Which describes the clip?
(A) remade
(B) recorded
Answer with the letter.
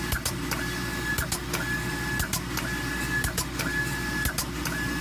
B